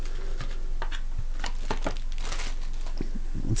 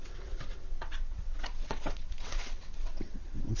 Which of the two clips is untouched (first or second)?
first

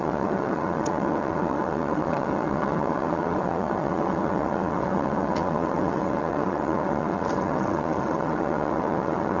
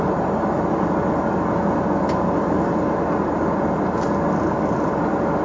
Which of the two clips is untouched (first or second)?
second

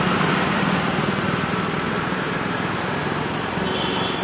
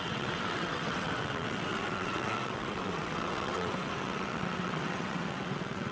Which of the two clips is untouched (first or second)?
first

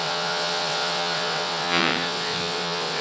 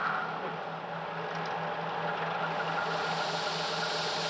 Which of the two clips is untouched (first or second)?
second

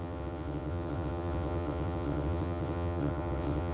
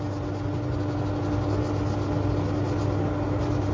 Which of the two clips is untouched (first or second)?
second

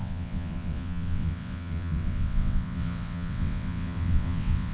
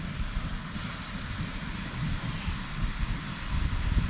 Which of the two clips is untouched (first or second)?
second